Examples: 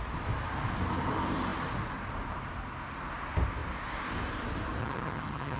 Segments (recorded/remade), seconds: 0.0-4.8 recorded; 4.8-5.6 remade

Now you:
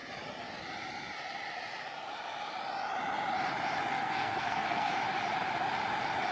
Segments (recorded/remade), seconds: 0.0-3.9 recorded; 3.9-4.9 remade; 4.9-6.3 recorded

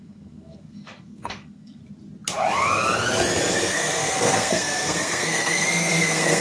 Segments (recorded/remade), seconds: 0.0-1.8 remade; 1.8-3.5 recorded; 3.5-6.4 remade

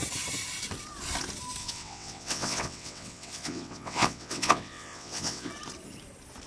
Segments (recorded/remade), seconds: 0.0-1.6 recorded; 1.6-5.5 remade; 5.5-6.5 recorded

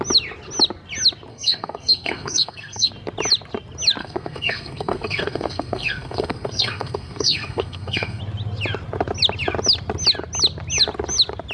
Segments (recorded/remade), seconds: 0.0-1.3 recorded; 1.3-2.9 remade; 2.9-4.0 recorded; 4.0-8.2 remade; 8.2-11.5 recorded